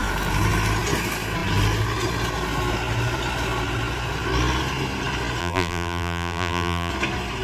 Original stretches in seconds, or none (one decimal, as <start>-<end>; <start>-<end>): 0.0-5.4; 6.9-7.4